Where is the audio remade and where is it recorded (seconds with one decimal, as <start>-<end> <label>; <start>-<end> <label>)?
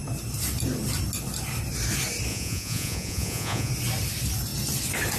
0.0-2.3 recorded; 2.3-3.7 remade; 3.7-5.2 recorded